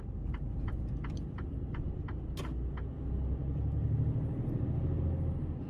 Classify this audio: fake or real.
real